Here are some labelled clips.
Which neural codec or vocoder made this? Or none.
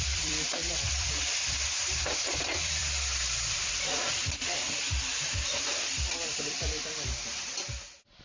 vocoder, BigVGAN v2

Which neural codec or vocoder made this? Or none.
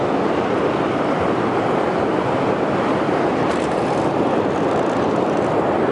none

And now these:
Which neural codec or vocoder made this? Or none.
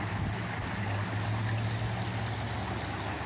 none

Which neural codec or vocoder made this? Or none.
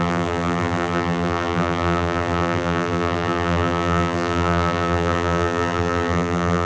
vocoder, BigVGAN v2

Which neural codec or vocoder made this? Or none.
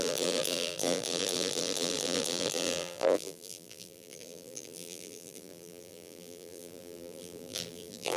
vocoder, BigVGAN v2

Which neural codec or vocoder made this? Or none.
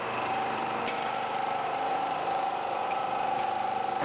vocoder, BigVGAN v2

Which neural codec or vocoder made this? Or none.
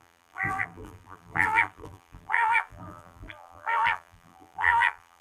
vocoder, BigVGAN v2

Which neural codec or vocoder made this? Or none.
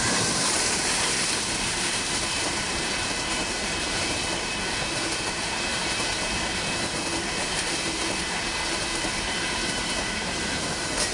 vocoder, BigVGAN v2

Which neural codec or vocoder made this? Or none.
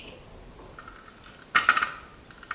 none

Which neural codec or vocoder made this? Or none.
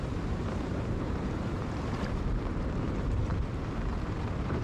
vocoder, BigVGAN v2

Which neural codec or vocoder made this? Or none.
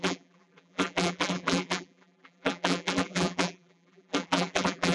vocoder, BigVGAN v2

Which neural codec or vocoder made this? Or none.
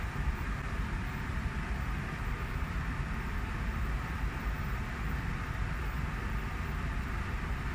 vocoder, BigVGAN v2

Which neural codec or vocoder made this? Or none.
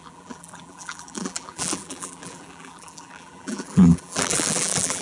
vocoder, BigVGAN v2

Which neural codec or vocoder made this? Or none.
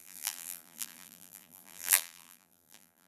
vocoder, BigVGAN v2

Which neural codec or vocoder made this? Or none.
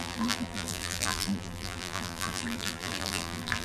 vocoder, BigVGAN v2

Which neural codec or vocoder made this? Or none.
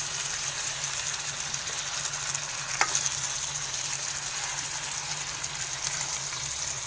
none